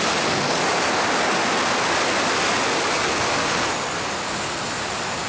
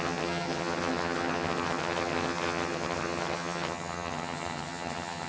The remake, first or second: second